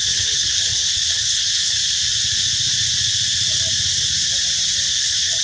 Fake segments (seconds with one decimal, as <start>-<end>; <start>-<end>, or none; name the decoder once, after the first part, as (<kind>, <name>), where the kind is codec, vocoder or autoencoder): 0.0-1.8 (codec, HILCodec); 5.0-5.4